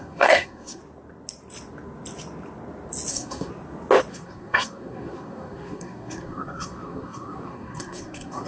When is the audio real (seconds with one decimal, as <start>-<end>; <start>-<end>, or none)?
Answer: 0.8-3.1; 3.5-4.1